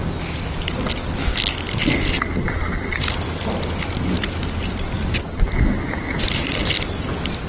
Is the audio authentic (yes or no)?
yes